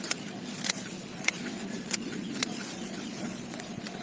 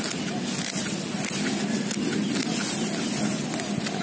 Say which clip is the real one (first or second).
second